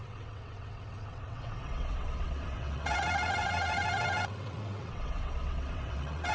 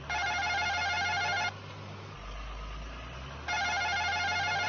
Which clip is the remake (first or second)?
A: first